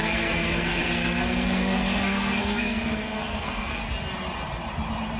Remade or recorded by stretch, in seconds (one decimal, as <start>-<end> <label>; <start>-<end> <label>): 0.0-3.8 remade; 3.8-5.2 recorded